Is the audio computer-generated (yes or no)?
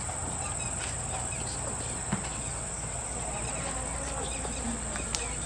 no